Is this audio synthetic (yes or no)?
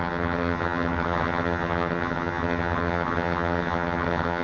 yes